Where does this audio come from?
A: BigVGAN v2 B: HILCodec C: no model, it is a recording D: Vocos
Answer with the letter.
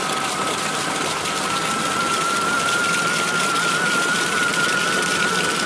C